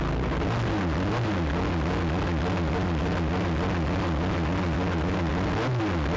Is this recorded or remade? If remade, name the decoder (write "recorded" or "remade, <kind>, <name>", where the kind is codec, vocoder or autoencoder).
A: recorded